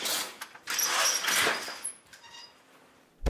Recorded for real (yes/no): yes